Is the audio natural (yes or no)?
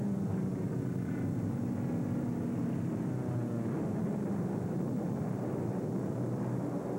yes